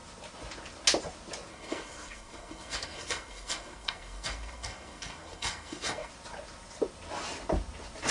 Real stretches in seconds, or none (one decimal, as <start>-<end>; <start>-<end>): 0.0-1.5; 6.1-8.1